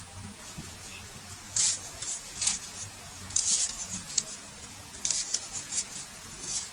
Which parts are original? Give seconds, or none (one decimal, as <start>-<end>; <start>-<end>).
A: 0.9-1.5; 4.4-5.3